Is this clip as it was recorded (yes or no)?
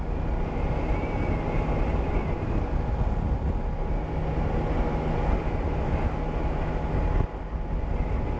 yes